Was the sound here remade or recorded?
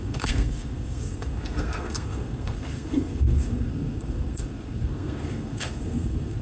remade